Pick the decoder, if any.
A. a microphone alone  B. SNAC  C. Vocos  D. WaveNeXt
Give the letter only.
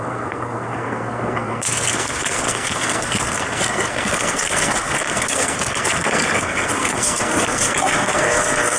B